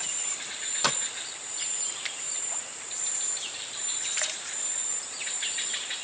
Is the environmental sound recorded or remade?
remade